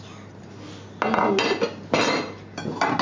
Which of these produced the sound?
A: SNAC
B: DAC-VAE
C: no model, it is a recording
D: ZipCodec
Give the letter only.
C